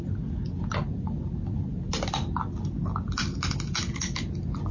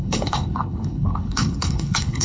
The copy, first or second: second